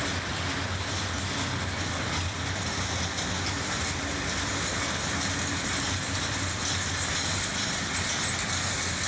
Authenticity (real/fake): real